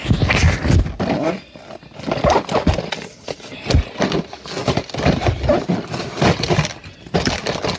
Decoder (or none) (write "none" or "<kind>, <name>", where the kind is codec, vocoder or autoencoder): none